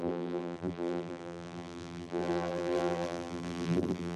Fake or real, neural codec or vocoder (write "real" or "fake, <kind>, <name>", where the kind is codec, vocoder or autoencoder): fake, vocoder, BigVGAN v2